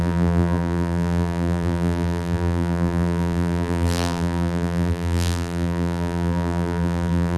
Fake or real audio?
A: fake